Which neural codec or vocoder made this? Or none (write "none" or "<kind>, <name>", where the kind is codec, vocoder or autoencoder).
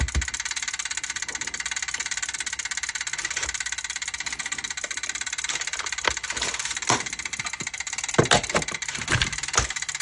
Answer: none